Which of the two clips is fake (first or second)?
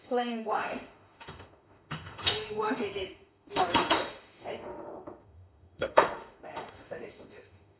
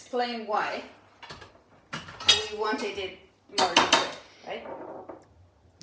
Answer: first